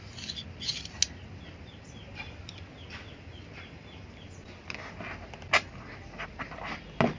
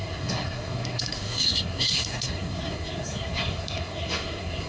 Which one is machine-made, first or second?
second